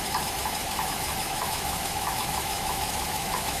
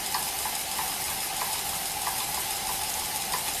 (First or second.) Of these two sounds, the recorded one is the second